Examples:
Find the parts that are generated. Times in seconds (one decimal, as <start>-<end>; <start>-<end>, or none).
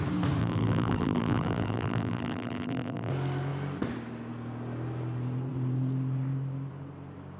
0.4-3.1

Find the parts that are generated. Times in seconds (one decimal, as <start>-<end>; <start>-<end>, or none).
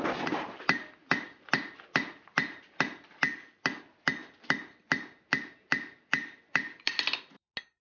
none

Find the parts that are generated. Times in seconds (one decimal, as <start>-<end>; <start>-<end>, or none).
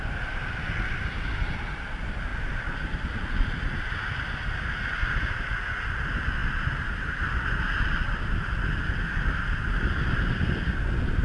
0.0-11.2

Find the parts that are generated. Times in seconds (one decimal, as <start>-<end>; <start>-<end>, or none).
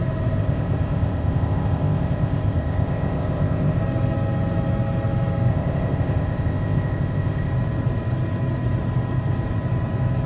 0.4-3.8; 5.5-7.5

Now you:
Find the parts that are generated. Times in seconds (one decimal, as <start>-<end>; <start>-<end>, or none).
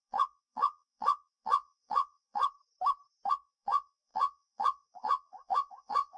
0.0-2.4; 3.3-6.2